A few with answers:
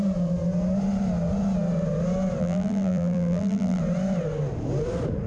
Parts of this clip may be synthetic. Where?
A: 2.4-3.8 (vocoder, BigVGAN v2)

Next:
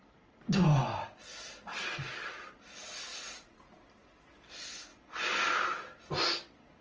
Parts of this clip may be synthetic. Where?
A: none

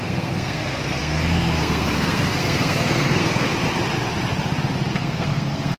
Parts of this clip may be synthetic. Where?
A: 0.0-3.5 (codec, SNAC); 4.9-5.8

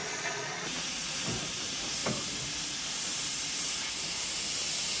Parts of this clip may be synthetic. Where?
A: 0.0-1.1 (vocoder, Vocos)